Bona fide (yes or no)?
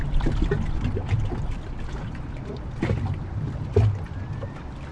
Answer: yes